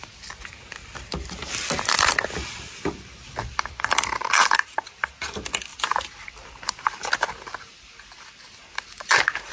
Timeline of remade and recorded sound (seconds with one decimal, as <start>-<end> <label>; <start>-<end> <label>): 0.0-0.8 recorded; 0.8-4.1 remade; 4.1-5.7 recorded; 5.7-7.1 remade; 7.1-9.5 recorded